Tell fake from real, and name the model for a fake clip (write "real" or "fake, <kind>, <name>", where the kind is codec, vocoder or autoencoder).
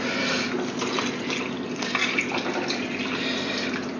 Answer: real